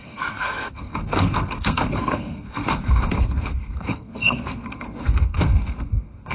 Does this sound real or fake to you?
fake